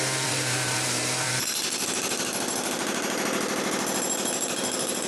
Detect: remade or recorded remade